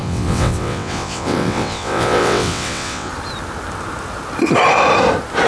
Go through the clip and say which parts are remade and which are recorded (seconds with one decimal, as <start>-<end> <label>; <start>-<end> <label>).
0.0-3.1 remade; 3.1-5.5 recorded